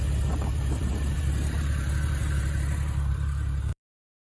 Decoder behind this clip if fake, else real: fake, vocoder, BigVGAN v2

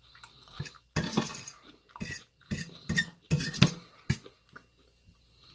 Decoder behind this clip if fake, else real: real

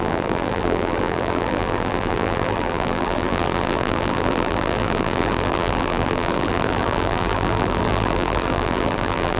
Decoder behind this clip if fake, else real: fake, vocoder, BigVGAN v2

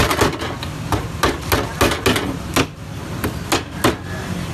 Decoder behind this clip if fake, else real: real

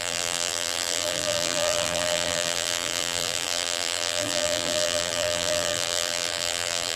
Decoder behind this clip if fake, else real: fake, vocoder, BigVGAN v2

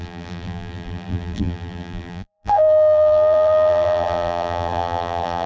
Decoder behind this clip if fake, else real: fake, vocoder, BigVGAN v2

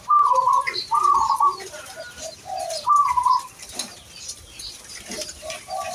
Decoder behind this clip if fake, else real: fake, vocoder, BigVGAN v2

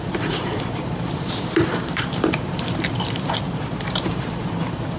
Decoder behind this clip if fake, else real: fake, vocoder, BigVGAN v2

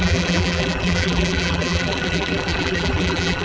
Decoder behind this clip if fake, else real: fake, vocoder, BigVGAN v2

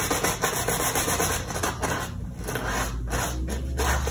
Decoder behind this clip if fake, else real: real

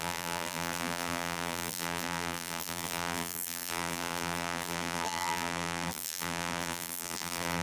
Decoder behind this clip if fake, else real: fake, vocoder, BigVGAN v2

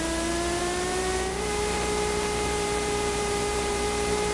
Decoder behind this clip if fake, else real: fake, vocoder, BigVGAN v2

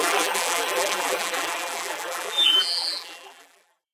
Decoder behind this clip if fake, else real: fake, vocoder, BigVGAN v2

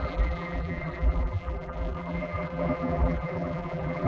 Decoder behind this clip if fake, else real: fake, vocoder, BigVGAN v2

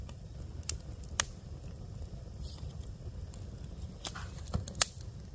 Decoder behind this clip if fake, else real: real